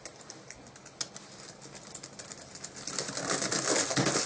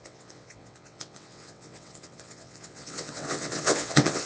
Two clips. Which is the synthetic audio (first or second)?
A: second